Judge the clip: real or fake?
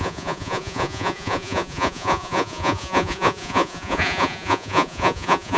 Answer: fake